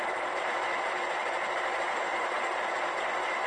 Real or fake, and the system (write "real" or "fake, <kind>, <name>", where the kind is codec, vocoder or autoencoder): fake, vocoder, BigVGAN v2